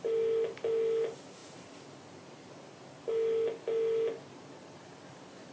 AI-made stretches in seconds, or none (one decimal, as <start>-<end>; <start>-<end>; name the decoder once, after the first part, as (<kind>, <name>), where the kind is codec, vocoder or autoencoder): none